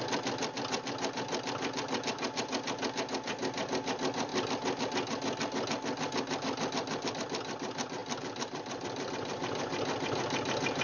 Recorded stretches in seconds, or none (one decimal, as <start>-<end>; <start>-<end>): 0.0-8.0; 9.1-10.8